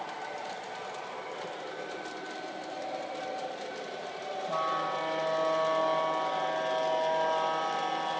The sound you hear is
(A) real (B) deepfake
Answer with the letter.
A